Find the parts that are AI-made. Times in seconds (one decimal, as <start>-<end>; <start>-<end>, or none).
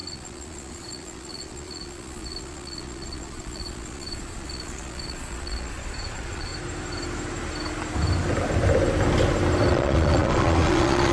0.0-6.5; 9.7-11.1